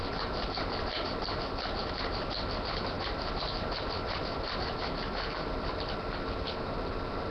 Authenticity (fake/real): real